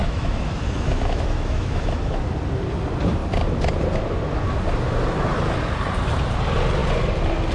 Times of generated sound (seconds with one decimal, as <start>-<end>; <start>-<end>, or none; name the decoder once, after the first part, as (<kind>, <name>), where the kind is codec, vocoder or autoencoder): 0.0-2.3 (autoencoder, DAC-VAE)

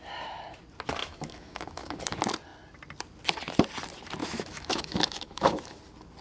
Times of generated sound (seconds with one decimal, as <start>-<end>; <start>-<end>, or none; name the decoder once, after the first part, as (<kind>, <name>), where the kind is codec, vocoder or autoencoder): 1.0-2.0 (autoencoder, DAC-VAE); 4.2-5.8

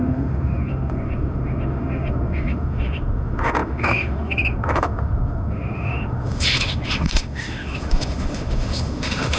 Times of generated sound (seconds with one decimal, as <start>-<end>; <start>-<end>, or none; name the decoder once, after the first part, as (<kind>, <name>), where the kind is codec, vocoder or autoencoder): 0.0-9.4 (autoencoder, DAC-VAE)

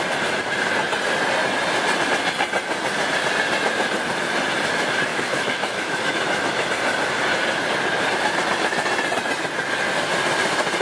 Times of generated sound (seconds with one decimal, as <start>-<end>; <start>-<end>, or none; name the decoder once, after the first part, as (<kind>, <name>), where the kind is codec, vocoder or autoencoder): 5.1-6.7 (autoencoder, DAC-VAE)

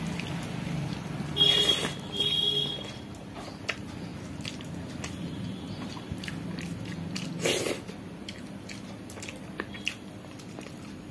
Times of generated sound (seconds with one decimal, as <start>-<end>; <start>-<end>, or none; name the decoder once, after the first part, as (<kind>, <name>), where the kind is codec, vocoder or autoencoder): none

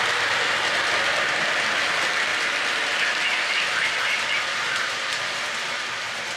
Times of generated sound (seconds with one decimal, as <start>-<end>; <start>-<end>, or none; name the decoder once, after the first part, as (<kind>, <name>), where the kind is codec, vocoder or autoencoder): none